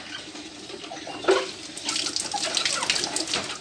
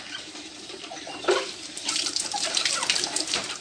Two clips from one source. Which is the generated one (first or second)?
second